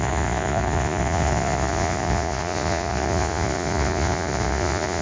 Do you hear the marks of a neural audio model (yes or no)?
yes